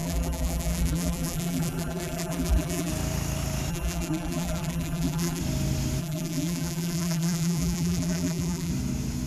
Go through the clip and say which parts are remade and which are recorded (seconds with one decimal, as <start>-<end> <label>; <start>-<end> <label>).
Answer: 0.0-2.9 remade; 2.9-3.7 recorded; 3.7-5.4 remade; 5.4-6.0 recorded; 6.0-8.7 remade; 8.7-9.3 recorded